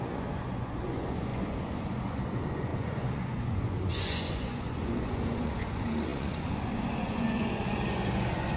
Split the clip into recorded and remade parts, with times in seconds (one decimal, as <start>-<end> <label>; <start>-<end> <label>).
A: 0.0-8.6 remade